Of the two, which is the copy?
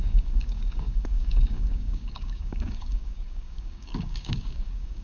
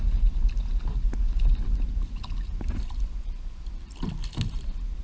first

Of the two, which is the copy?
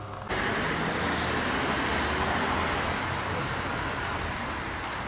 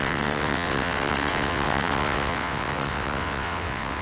second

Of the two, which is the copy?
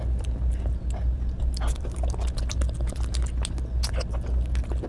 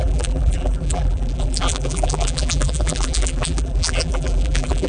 second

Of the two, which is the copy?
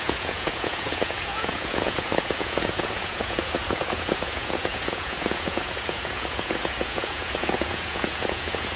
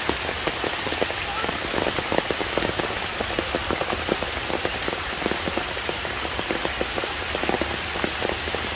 first